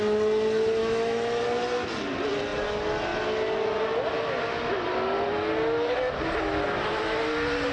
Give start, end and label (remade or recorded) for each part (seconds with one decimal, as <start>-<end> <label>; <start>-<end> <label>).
0.0-0.8 recorded; 0.8-1.4 remade; 1.4-7.7 recorded